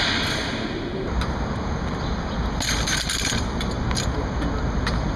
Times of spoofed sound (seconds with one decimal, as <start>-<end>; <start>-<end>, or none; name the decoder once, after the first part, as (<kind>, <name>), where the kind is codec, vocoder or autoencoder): none